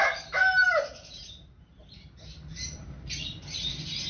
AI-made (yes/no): yes